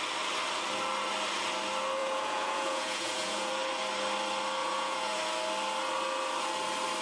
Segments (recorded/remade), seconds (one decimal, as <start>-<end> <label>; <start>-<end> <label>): 0.0-2.0 recorded; 2.0-3.5 remade; 3.5-4.6 recorded; 4.6-5.2 remade; 5.2-7.0 recorded